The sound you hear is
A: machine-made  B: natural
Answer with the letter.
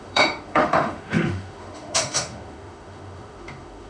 A